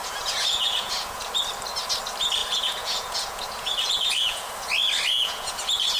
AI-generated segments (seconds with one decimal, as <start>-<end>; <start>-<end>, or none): 0.0-1.2; 2.4-4.5; 5.1-5.6